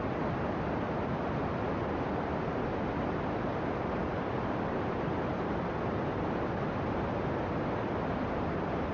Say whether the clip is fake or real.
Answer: real